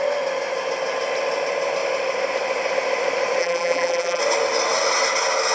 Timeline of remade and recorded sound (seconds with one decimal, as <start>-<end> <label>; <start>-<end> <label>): 0.0-3.4 recorded; 3.4-4.2 remade; 4.2-5.5 recorded